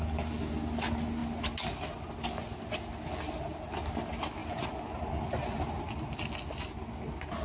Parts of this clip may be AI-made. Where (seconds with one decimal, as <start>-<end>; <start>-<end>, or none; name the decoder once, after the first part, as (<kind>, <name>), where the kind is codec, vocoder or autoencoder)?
none